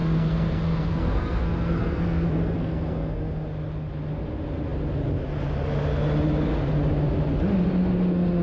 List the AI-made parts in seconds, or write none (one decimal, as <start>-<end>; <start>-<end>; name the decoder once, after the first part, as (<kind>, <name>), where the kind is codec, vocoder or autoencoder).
0.0-3.2 (codec, SNAC)